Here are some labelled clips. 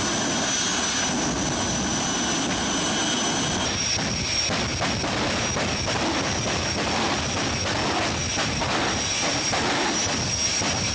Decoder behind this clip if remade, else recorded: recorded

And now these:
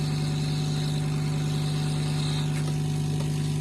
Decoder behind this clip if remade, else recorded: recorded